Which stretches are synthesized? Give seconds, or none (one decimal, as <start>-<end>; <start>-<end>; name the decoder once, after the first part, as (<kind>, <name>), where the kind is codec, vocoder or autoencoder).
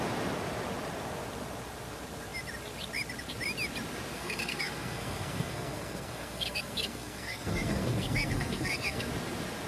4.1-9.1 (codec, SNAC)